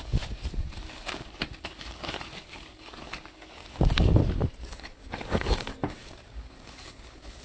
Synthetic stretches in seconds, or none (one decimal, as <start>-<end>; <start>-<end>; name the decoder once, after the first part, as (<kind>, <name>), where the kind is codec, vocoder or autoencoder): 0.0-4.2 (codec, DAC); 4.7-7.4